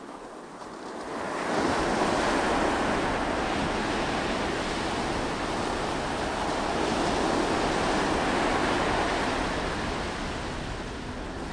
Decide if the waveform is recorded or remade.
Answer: recorded